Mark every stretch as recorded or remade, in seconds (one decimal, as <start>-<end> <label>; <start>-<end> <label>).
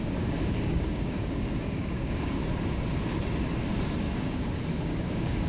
0.0-2.4 remade; 2.4-4.0 recorded; 4.0-5.5 remade